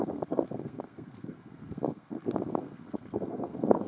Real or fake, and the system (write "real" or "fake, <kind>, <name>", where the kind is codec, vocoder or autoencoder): fake, codec, SNAC